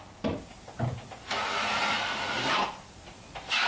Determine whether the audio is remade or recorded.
recorded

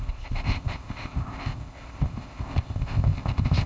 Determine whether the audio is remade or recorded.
remade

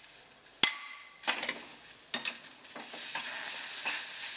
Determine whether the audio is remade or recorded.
recorded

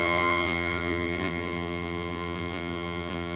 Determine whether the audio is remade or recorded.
remade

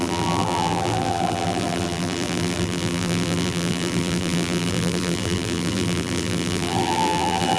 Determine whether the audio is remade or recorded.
remade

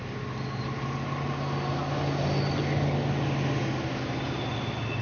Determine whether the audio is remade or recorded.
recorded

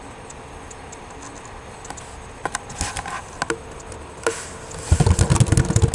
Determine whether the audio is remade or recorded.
recorded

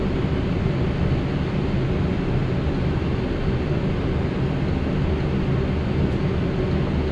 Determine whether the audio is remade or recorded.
recorded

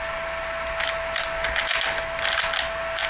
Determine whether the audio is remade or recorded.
recorded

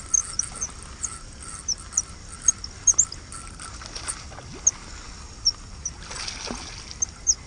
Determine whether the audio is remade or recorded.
recorded